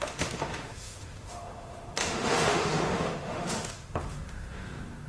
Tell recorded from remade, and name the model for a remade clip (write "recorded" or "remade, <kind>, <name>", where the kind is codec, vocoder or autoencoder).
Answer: remade, autoencoder, DAC-VAE